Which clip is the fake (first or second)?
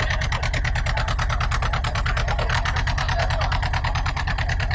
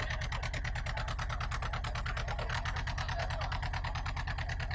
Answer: first